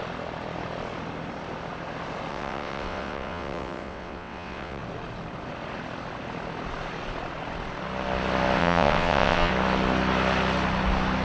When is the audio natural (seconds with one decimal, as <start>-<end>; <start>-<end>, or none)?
0.0-2.3; 4.8-8.6; 9.5-11.2